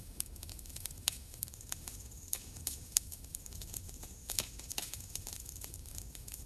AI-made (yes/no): yes